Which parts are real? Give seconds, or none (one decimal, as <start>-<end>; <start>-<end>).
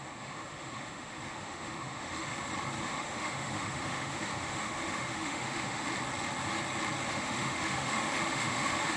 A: 2.3-2.8; 5.9-7.1